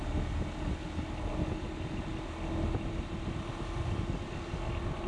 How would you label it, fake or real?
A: real